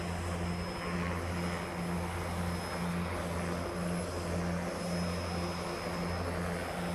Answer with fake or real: real